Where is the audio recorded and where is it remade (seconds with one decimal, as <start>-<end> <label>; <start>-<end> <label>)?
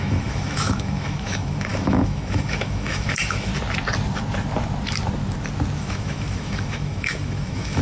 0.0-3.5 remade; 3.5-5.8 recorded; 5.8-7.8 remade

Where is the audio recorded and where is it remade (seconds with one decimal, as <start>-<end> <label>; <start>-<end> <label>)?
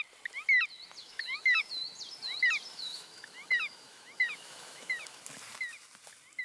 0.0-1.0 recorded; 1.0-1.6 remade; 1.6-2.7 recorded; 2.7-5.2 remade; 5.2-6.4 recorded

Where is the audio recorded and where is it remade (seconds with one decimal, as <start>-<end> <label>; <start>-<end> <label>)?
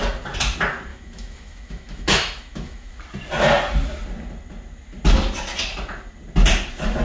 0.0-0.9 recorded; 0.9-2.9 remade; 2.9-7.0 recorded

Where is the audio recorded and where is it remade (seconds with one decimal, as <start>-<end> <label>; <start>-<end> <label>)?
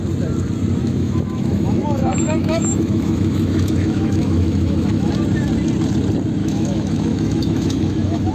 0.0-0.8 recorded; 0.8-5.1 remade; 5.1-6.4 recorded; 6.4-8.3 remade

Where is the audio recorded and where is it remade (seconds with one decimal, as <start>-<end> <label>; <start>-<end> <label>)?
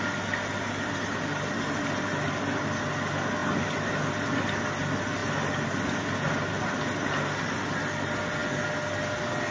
0.0-9.5 recorded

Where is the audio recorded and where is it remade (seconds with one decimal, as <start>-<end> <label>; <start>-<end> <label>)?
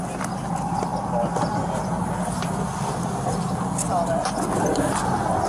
0.0-5.5 recorded